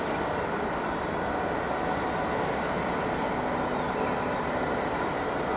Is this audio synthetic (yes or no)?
no